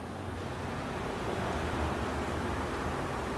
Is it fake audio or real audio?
real